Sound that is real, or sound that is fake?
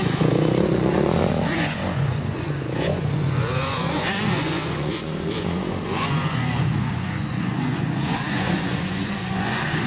fake